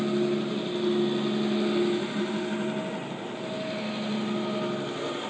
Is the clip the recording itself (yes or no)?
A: yes